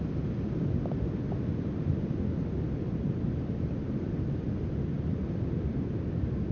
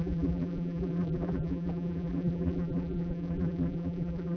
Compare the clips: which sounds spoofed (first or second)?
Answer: second